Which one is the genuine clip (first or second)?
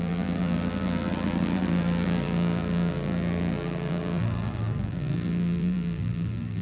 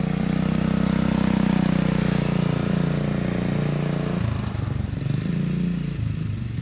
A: second